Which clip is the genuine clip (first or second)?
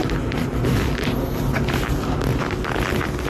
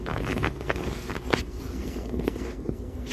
first